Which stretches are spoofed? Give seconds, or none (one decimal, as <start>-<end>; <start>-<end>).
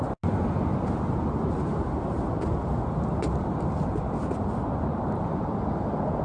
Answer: none